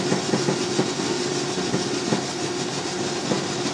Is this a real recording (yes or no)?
yes